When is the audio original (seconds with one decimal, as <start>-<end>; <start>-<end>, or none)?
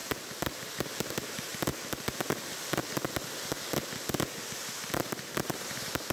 0.0-1.1; 1.5-4.6